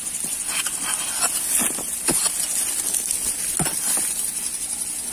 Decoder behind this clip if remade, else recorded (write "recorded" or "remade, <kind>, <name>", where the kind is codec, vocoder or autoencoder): recorded